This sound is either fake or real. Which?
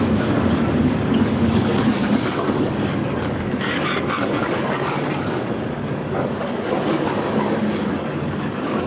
fake